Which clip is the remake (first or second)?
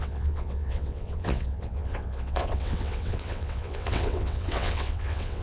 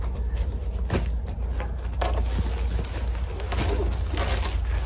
first